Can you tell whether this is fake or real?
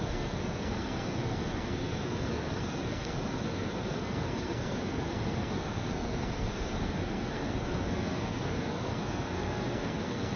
fake